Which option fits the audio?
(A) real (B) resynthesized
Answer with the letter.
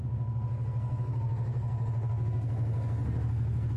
B